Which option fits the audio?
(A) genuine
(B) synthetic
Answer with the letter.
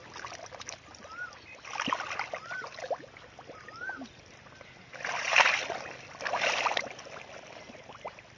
A